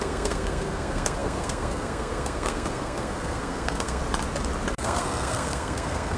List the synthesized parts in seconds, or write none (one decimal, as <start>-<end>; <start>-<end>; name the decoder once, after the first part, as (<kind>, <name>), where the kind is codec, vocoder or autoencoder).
0.0-4.0 (codec, SNAC); 4.7-6.2